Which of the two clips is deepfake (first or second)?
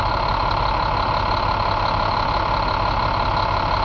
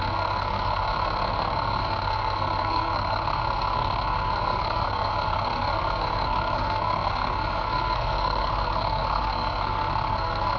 second